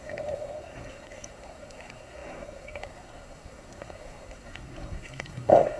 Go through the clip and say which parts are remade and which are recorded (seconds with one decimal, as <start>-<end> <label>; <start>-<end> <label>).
0.0-5.8 remade